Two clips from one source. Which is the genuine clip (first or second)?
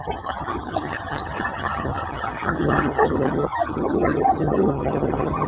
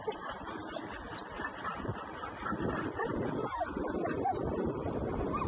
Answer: second